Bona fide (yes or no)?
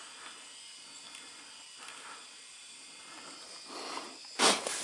yes